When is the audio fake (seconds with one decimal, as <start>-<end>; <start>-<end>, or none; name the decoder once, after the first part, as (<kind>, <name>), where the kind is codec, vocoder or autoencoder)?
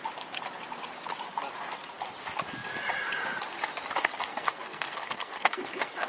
4.3-6.1 (codec, SNAC)